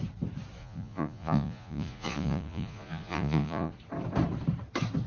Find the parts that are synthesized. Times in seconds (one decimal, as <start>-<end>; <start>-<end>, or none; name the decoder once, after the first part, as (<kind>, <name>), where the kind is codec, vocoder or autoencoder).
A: 0.6-3.7 (vocoder, Vocos)